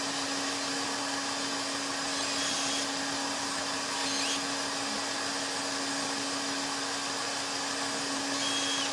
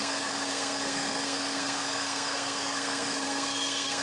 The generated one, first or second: second